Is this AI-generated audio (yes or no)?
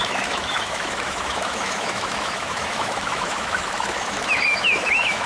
yes